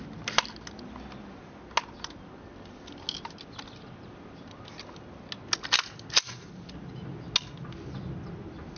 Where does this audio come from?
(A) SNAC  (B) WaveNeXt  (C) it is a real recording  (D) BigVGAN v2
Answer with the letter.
C